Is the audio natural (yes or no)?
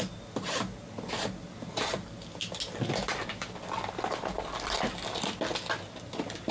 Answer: yes